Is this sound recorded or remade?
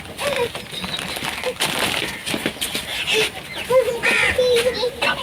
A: recorded